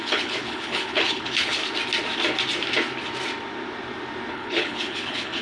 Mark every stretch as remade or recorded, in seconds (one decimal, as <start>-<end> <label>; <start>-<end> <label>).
0.0-1.6 remade; 1.6-4.3 recorded; 4.3-5.4 remade